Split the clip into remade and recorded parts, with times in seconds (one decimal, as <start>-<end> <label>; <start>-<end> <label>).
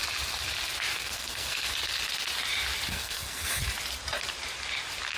0.0-0.9 recorded; 0.9-1.7 remade; 1.7-2.9 recorded; 2.9-3.6 remade; 3.6-5.2 recorded